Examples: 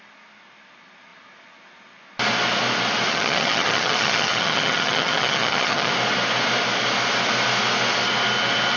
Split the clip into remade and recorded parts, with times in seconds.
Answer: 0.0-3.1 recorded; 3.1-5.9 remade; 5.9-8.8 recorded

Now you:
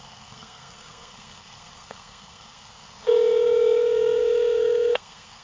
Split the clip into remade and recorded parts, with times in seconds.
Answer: 0.0-5.4 remade

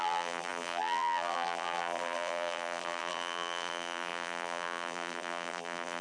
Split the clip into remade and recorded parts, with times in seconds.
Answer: 0.0-6.0 remade

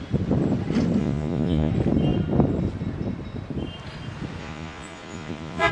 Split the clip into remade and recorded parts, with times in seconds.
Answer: 0.0-1.0 recorded; 1.0-1.7 remade; 1.7-4.4 recorded; 4.4-5.7 remade

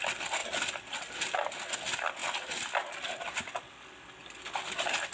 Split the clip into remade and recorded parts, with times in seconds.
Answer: 0.0-5.1 recorded

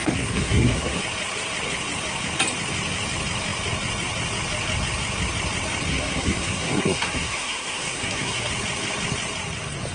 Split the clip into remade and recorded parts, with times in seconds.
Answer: 0.0-1.0 remade; 1.0-5.9 recorded; 5.9-8.5 remade; 8.5-9.9 recorded

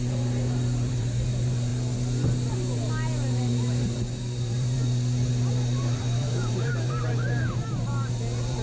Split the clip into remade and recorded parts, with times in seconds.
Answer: 0.0-1.7 remade; 1.7-2.5 recorded; 2.5-8.6 remade